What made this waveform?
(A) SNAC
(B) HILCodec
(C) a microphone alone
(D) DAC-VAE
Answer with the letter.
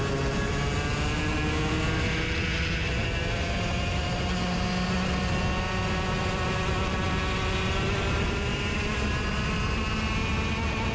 C